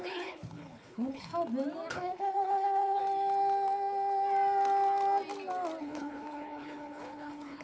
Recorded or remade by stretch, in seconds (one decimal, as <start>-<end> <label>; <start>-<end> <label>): 0.0-1.3 remade; 1.3-1.9 recorded; 1.9-3.0 remade; 3.0-5.8 recorded; 5.8-7.6 remade